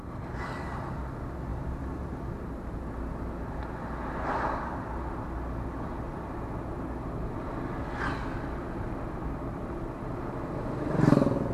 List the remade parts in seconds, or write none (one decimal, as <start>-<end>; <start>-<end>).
none